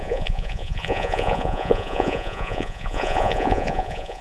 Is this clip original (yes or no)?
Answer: no